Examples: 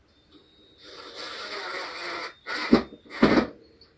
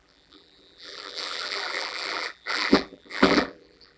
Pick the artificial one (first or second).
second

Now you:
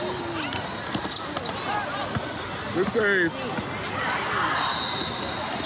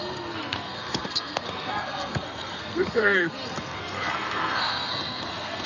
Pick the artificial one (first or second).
second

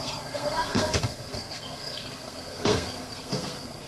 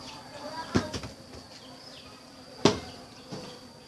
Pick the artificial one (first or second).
first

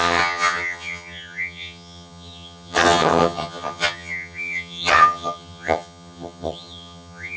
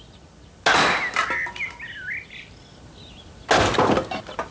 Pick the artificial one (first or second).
first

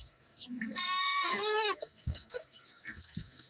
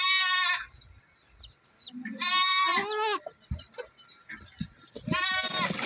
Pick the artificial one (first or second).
first